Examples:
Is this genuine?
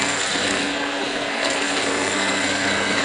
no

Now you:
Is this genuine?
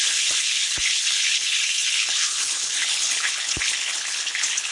no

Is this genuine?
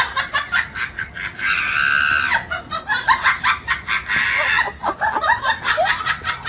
yes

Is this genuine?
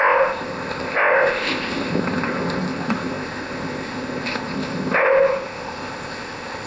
no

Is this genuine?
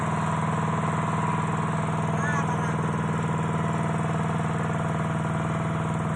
yes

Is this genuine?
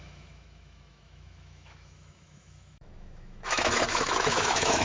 no